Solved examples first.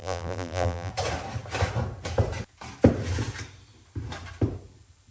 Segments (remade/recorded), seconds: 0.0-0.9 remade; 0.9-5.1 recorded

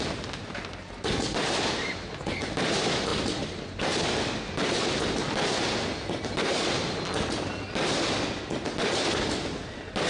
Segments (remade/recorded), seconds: 0.0-10.1 recorded

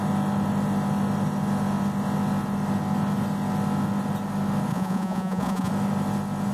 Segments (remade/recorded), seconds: 0.0-4.7 recorded; 4.7-5.7 remade; 5.7-6.5 recorded

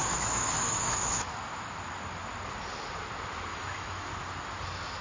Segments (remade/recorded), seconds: 0.0-1.3 remade; 1.3-3.5 recorded; 3.5-4.1 remade; 4.1-5.0 recorded

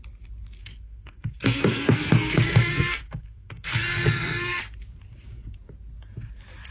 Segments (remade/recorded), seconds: 0.0-0.6 recorded; 0.6-4.6 remade; 4.6-6.7 recorded